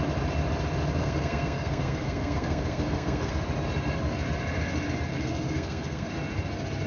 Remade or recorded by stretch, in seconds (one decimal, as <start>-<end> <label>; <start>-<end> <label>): 0.0-1.0 recorded; 1.0-3.3 remade; 3.3-5.1 recorded; 5.1-6.1 remade; 6.1-6.9 recorded